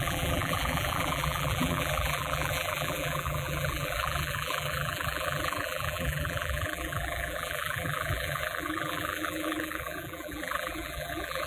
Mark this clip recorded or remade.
remade